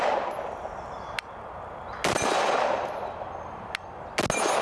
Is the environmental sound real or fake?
real